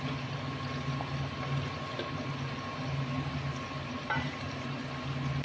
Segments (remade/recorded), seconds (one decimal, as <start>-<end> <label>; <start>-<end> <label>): 0.0-5.4 recorded

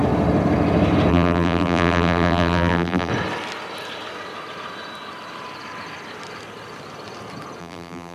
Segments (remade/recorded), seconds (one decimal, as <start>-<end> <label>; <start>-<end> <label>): 0.0-1.1 recorded; 1.1-3.1 remade; 3.1-7.6 recorded; 7.6-8.1 remade

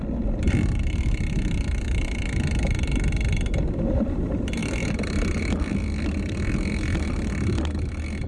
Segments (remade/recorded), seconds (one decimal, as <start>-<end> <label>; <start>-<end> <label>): 0.0-4.6 recorded; 4.6-5.4 remade; 5.4-8.3 recorded

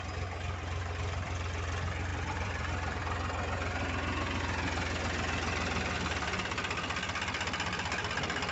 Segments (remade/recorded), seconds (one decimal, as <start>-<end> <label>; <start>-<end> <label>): 0.0-2.1 recorded; 2.1-3.0 remade; 3.0-8.5 recorded

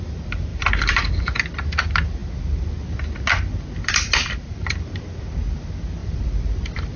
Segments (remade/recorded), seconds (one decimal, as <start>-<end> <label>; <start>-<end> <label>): 0.0-0.5 recorded; 0.5-1.2 remade; 1.2-4.2 recorded; 4.2-5.0 remade; 5.0-6.0 recorded; 6.0-7.0 remade

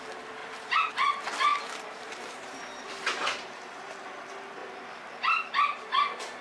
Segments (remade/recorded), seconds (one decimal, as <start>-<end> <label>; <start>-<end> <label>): 0.0-0.4 recorded; 0.4-0.9 remade; 0.9-1.5 recorded; 1.5-2.9 remade; 2.9-4.6 recorded; 4.6-5.5 remade; 5.5-6.4 recorded